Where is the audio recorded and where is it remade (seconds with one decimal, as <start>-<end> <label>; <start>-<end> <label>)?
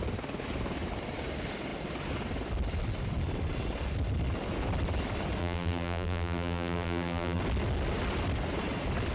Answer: 0.0-5.4 recorded; 5.4-7.4 remade; 7.4-9.1 recorded